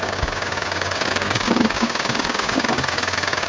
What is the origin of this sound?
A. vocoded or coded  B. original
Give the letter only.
A